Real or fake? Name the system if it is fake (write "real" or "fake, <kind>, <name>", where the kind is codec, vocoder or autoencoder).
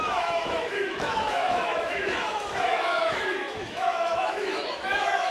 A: fake, autoencoder, DAC-VAE